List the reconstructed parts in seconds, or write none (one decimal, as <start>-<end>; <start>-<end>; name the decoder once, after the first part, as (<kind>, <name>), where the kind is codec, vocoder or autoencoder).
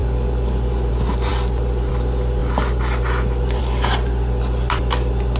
none